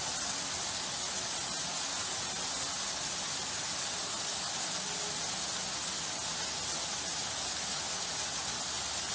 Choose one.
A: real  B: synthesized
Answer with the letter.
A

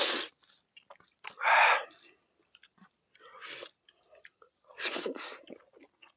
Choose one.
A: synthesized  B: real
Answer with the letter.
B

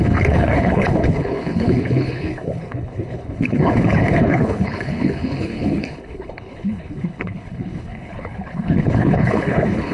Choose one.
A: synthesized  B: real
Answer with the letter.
A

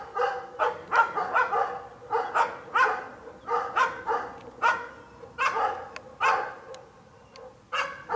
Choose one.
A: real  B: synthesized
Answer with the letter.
A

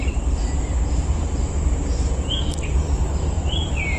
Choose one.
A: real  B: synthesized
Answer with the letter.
B